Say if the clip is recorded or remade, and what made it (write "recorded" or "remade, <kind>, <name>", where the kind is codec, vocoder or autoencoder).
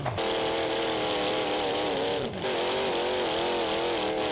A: recorded